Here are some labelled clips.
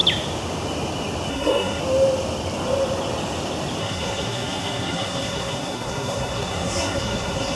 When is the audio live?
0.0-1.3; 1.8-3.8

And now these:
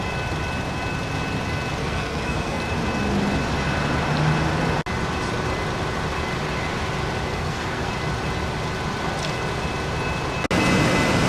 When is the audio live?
0.0-1.8; 2.6-7.3; 7.9-11.3